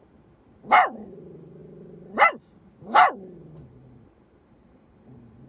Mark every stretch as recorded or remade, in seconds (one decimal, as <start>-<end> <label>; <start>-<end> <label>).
0.0-5.5 recorded